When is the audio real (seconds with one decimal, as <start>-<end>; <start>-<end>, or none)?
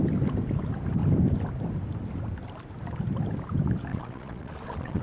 0.0-3.9